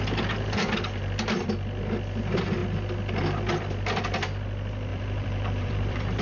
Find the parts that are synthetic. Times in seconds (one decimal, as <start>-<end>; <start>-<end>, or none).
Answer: 4.9-6.2

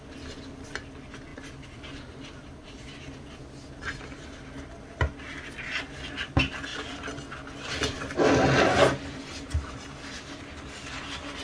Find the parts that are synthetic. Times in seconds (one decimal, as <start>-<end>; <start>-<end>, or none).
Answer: none

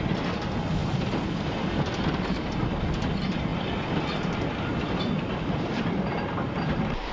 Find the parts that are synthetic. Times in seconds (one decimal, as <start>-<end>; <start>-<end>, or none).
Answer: none

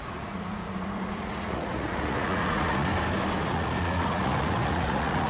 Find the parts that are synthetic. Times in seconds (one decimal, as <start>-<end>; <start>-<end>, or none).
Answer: 0.0-2.9; 3.4-5.3

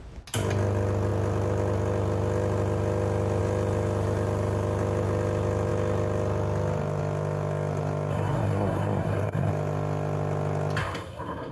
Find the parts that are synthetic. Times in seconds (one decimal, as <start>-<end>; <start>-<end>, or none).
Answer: 8.1-9.5; 10.8-11.5

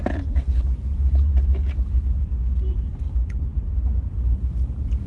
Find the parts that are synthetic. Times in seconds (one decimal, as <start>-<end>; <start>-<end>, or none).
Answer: 0.0-1.3; 2.7-3.5; 4.3-5.1